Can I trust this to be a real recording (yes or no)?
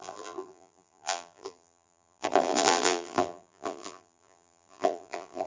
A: no